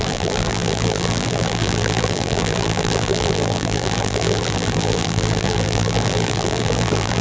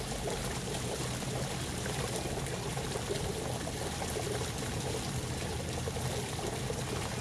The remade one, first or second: first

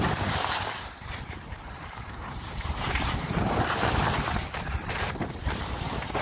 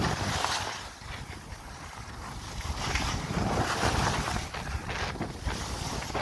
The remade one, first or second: first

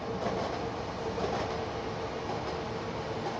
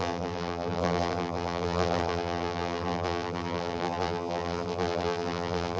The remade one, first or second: second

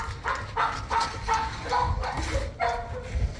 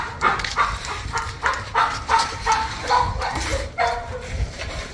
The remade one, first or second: second